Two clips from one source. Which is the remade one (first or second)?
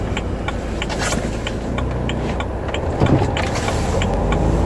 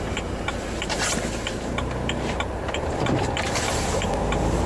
second